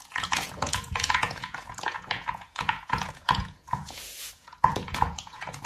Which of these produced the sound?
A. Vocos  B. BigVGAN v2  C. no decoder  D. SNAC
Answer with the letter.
A